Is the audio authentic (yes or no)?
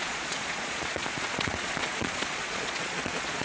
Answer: no